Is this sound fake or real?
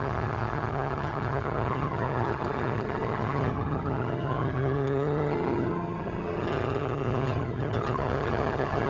fake